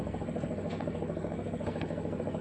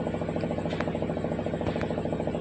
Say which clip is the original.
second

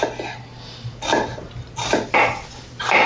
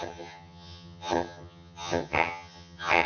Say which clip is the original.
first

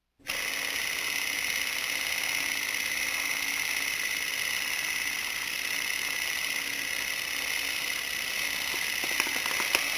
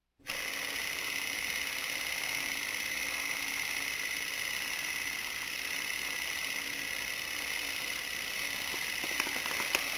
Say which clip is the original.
first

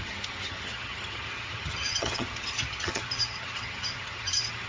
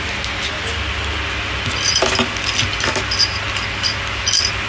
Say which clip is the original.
second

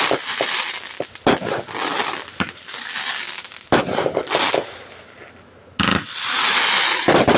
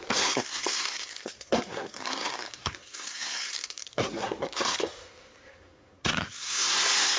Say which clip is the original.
first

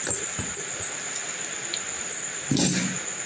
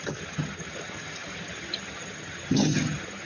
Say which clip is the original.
first